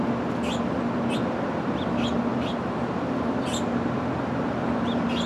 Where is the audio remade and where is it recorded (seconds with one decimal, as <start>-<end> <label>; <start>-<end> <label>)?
0.0-5.3 recorded